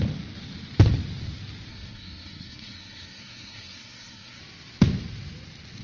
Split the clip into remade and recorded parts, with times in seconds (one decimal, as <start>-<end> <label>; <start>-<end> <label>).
0.0-1.7 recorded; 1.7-4.4 remade; 4.4-5.8 recorded